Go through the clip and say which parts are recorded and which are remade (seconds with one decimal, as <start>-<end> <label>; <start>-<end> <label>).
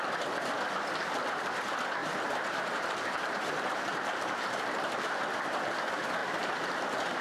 0.0-2.0 recorded; 2.0-5.0 remade; 5.0-6.2 recorded; 6.2-7.2 remade